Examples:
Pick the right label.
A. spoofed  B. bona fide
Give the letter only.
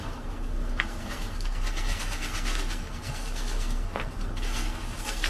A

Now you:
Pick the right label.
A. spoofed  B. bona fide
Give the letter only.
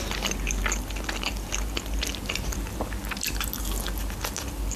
B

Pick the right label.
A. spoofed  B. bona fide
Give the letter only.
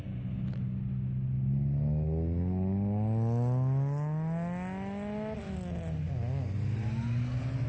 B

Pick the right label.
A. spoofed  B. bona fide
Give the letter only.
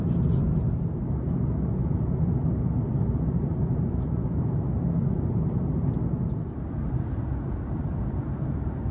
B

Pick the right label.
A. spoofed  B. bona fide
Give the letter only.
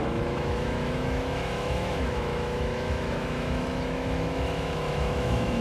A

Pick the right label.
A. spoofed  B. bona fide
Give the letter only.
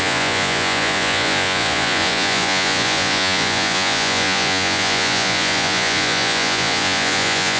A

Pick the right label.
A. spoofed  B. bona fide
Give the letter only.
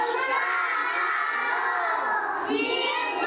B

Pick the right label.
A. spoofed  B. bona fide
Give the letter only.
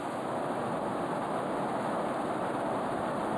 B